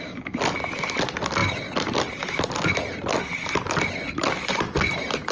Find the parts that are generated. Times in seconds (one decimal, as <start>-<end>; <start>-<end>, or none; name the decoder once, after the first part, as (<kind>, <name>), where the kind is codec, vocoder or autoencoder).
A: none